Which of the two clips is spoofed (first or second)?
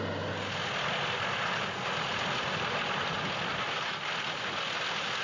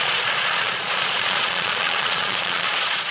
second